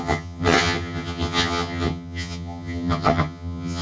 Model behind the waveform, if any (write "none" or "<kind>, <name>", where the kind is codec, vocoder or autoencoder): vocoder, HiFi-GAN